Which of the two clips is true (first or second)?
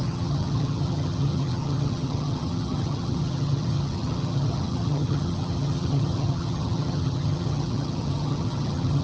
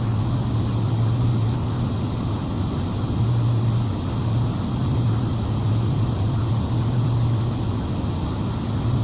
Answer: second